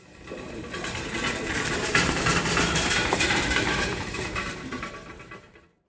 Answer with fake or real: fake